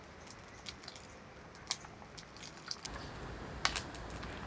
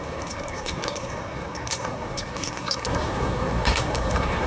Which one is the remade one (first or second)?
second